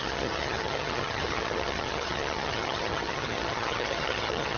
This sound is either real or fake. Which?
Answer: fake